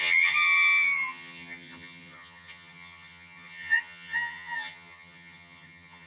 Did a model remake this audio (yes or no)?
yes